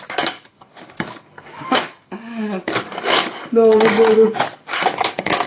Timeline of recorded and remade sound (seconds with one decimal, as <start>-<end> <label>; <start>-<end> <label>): 0.0-5.5 remade